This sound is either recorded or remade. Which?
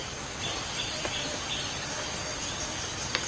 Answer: recorded